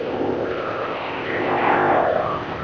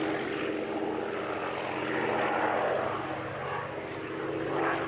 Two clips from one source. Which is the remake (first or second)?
first